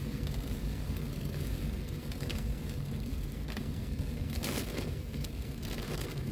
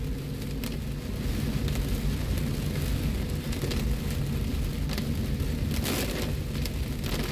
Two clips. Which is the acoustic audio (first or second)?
second